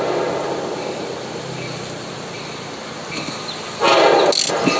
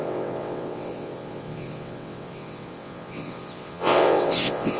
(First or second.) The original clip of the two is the first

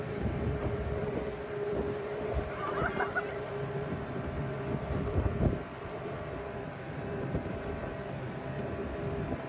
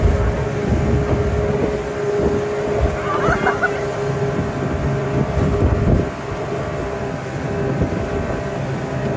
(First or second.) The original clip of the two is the second